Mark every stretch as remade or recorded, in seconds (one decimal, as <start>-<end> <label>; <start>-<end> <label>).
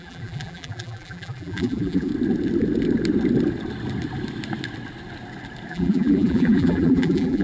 0.0-2.1 remade; 2.1-5.7 recorded; 5.7-7.4 remade